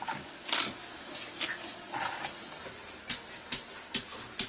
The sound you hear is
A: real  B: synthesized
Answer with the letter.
A